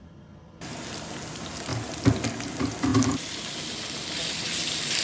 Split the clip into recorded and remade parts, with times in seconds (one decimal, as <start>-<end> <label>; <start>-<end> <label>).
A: 0.0-5.0 recorded

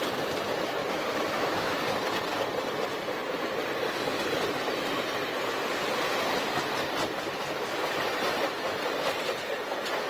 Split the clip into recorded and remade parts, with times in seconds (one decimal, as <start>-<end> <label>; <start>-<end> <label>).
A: 0.0-0.8 recorded; 0.8-1.8 remade; 1.8-10.1 recorded